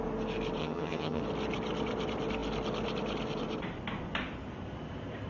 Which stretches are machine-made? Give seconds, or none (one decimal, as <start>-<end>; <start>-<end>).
0.6-1.2